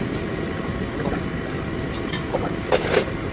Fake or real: real